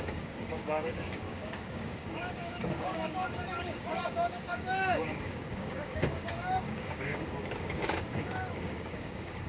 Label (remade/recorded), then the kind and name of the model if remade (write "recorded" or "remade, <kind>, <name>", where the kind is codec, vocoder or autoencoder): remade, codec, DAC